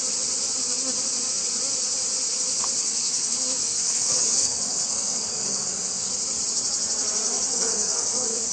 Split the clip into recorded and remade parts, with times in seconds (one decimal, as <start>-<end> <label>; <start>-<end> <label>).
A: 0.0-2.8 recorded; 2.8-6.1 remade; 6.1-7.5 recorded; 7.5-8.5 remade